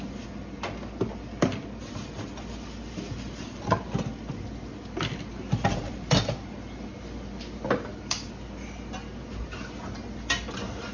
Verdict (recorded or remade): recorded